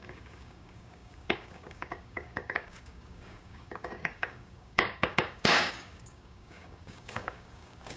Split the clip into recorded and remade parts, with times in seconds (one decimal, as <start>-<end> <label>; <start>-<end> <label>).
0.0-8.0 remade